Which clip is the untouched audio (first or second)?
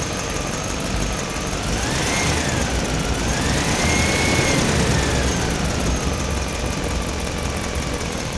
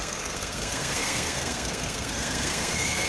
first